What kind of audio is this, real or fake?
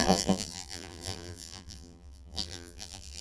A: fake